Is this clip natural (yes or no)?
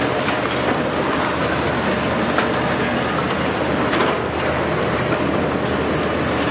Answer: yes